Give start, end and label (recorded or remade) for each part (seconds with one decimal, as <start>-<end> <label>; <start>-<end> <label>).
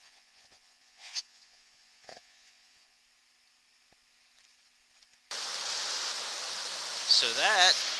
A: 0.0-3.0 remade; 3.0-8.0 recorded